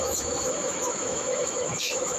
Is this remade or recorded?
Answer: remade